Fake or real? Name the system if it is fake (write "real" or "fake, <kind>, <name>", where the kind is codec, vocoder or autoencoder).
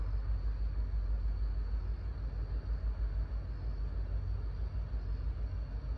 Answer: real